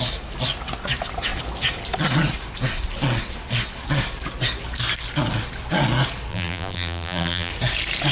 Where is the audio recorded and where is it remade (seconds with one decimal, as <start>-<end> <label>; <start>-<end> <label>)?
0.0-6.3 recorded; 6.3-7.5 remade; 7.5-8.1 recorded